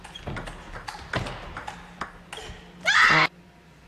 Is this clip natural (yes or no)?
yes